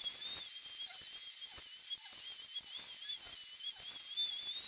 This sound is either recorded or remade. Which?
recorded